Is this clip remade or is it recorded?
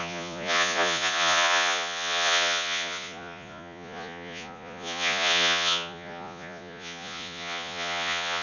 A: remade